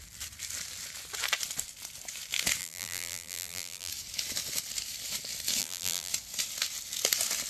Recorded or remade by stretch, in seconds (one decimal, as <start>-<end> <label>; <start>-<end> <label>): 0.0-2.6 recorded; 2.6-3.9 remade; 3.9-5.6 recorded; 5.6-6.1 remade; 6.1-7.5 recorded